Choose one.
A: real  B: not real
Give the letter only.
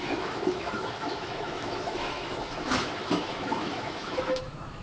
B